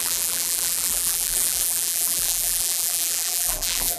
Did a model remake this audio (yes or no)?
yes